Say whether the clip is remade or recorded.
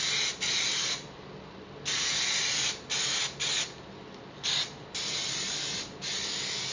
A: recorded